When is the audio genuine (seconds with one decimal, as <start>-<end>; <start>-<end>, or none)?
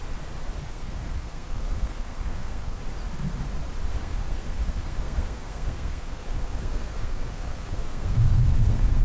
0.0-0.6; 2.8-3.9